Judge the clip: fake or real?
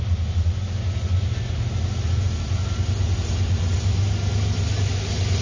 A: real